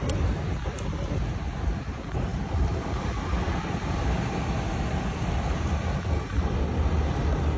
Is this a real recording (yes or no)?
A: yes